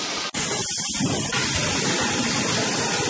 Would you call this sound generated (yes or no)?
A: no